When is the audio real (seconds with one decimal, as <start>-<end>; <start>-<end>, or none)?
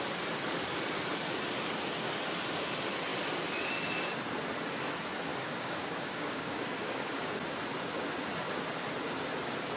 0.0-5.3; 7.3-9.8